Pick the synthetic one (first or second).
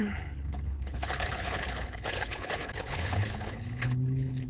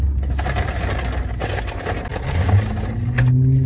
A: first